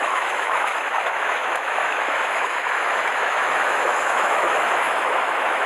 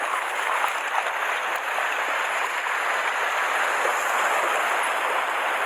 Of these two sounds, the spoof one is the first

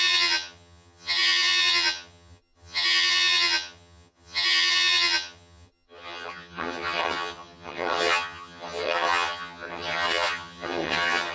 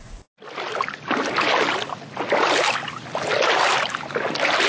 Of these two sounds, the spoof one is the first